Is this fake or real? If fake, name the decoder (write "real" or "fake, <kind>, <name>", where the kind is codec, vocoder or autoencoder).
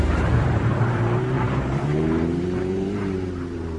fake, vocoder, BigVGAN v2